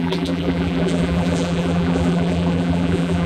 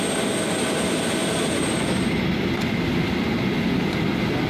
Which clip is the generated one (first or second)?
first